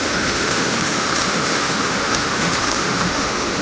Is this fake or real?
fake